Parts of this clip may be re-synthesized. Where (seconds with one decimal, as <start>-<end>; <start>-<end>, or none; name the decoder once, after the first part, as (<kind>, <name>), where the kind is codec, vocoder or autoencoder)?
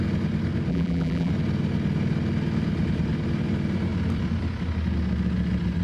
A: 0.7-1.3 (vocoder, BigVGAN v2)